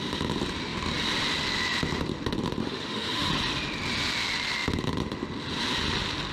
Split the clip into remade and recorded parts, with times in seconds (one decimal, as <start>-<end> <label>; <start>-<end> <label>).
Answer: 0.0-2.6 recorded; 2.6-3.3 remade; 3.3-6.3 recorded